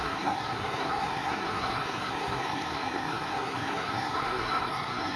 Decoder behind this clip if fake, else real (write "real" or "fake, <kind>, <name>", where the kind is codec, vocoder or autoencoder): fake, codec, SNAC